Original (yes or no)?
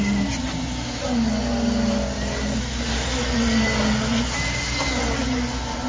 yes